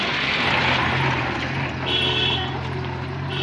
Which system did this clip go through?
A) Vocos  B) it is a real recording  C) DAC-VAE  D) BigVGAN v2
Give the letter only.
B